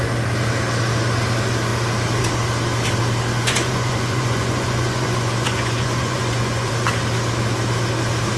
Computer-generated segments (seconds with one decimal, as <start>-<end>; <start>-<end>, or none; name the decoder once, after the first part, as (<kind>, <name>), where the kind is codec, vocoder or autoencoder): 3.3-6.7 (vocoder, Vocos)